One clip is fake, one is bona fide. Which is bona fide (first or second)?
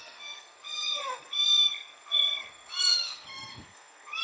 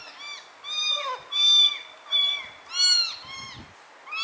second